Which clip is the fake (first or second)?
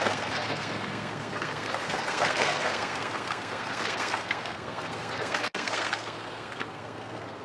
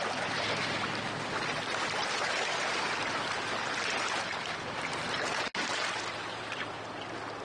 first